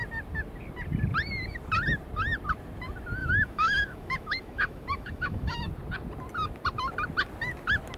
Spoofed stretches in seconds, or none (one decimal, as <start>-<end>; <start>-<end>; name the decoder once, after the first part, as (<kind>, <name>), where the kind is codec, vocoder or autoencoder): 3.2-5.7 (autoencoder, DAC-VAE)